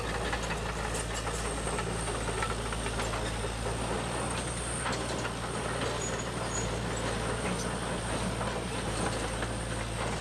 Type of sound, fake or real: real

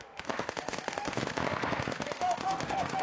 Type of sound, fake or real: fake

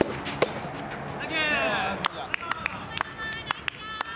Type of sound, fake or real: real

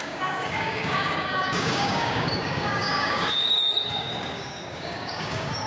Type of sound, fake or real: fake